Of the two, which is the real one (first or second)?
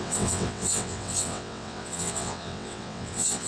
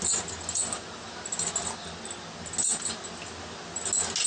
second